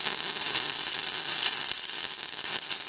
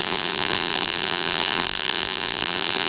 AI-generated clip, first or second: second